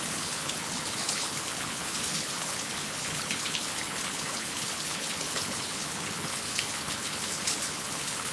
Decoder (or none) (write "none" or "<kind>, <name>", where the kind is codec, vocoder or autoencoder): codec, HILCodec